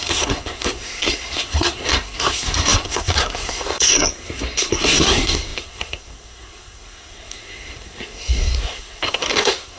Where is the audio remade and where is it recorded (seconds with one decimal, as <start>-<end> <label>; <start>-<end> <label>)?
0.0-9.8 remade